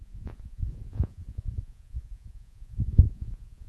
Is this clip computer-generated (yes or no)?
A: yes